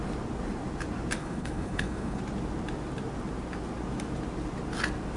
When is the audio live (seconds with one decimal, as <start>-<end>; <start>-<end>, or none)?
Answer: 0.0-1.2; 2.2-5.2